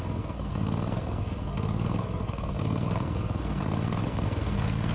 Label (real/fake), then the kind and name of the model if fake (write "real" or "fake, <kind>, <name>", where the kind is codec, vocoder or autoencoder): fake, codec, SNAC